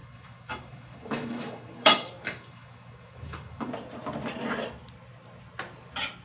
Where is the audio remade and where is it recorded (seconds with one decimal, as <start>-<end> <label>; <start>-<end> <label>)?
0.0-3.7 remade; 3.7-6.2 recorded